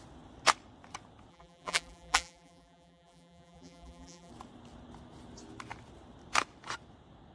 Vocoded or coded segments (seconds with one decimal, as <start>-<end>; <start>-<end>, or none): 1.3-4.3